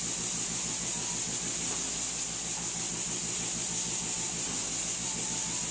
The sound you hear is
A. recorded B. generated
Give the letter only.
A